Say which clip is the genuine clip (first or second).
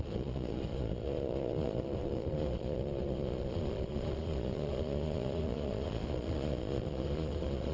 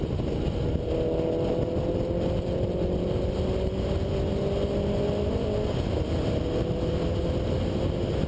second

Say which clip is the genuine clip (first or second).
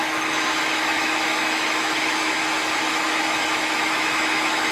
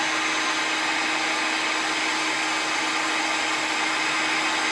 second